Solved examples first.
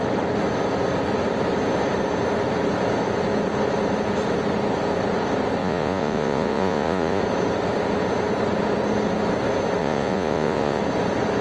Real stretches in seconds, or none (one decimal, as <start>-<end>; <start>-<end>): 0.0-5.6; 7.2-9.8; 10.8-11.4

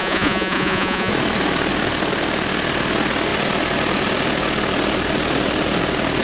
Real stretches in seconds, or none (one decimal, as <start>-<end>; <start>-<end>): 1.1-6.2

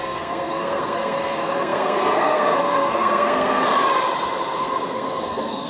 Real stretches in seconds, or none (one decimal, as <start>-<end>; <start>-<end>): 3.6-4.6

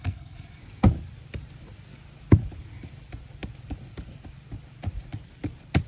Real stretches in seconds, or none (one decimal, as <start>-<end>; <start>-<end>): 0.6-5.9